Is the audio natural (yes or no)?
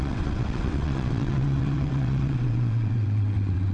no